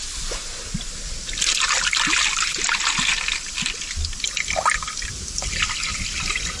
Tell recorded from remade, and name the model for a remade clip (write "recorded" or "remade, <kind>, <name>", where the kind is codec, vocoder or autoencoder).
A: remade, vocoder, BigVGAN v2